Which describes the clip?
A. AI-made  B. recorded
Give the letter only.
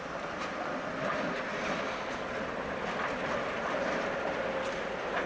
B